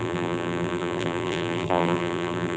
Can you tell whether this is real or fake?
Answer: fake